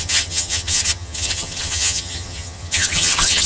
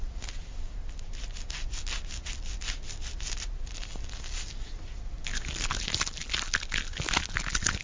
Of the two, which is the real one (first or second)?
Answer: second